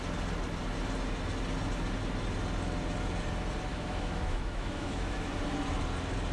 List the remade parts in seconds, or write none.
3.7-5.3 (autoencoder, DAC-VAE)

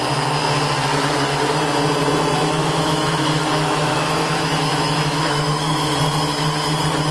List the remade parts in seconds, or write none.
2.6-6.0 (autoencoder, DAC-VAE)

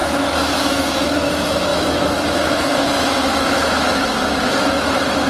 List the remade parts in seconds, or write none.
0.0-5.3 (autoencoder, DAC-VAE)

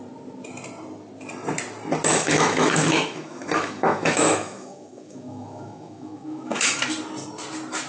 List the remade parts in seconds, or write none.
2.1-6.8 (autoencoder, DAC-VAE)

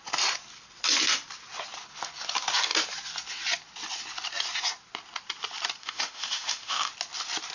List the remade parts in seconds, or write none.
5.8-6.9 (autoencoder, DAC-VAE)

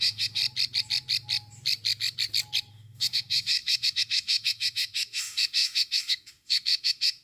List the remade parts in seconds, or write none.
0.0-0.4 (autoencoder, DAC-VAE); 2.7-7.2

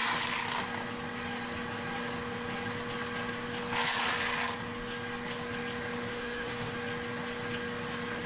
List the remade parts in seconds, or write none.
6.1-6.7 (autoencoder, DAC-VAE)